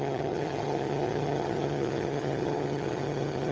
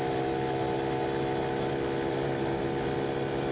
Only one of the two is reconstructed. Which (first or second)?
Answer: first